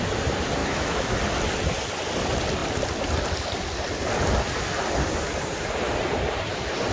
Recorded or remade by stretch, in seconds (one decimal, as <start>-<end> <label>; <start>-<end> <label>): 0.0-0.6 recorded; 0.6-1.2 remade; 1.2-6.9 recorded